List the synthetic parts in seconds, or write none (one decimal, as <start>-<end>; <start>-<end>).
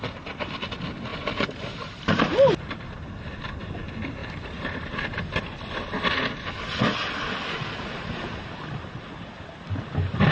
1.1-2.2; 4.2-5.3